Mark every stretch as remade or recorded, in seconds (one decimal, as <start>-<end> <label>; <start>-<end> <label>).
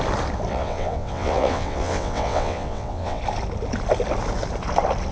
0.0-0.5 recorded; 0.5-3.2 remade; 3.2-5.1 recorded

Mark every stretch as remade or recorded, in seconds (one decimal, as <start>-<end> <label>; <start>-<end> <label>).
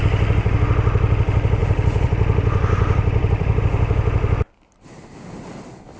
0.0-1.6 recorded; 1.6-3.6 remade; 3.6-6.0 recorded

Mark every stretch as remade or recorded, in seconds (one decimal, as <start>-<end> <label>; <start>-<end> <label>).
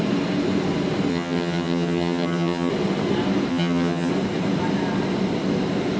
0.0-1.1 recorded; 1.1-2.7 remade; 2.7-3.5 recorded; 3.5-4.1 remade; 4.1-6.0 recorded